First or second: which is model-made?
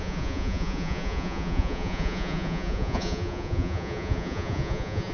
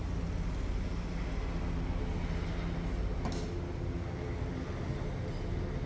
first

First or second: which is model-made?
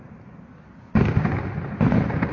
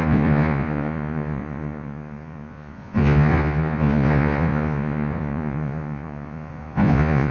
second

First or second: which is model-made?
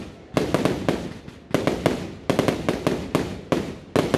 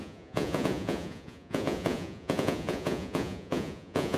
second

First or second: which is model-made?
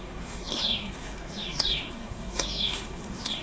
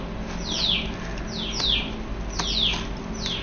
first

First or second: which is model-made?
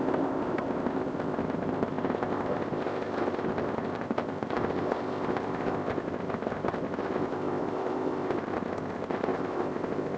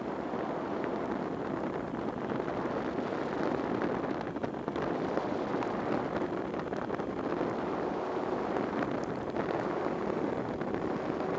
first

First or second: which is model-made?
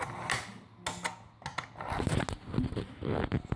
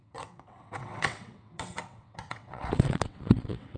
second